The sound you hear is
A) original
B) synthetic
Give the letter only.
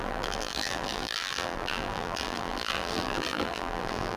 B